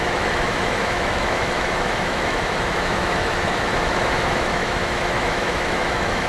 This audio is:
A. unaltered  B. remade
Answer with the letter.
B